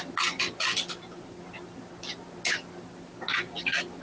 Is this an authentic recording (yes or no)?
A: yes